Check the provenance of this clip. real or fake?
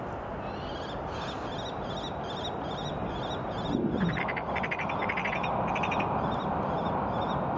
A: real